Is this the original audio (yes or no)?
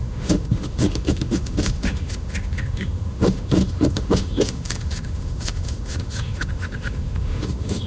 no